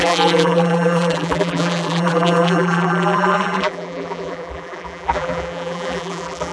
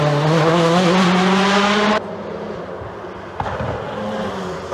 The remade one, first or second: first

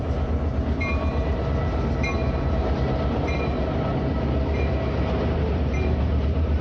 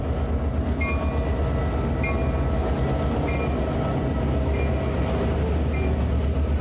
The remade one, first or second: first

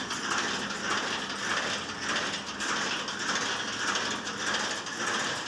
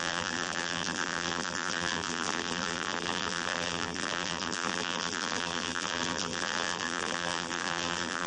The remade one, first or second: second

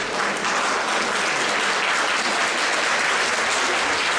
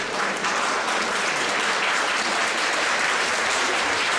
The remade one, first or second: second